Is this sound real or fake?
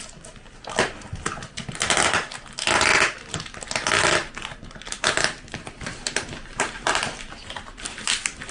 real